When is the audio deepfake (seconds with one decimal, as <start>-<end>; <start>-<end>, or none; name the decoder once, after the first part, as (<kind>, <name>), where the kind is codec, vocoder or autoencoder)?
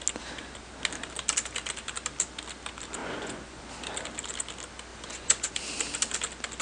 3.0-3.7 (vocoder, Vocos); 4.9-5.5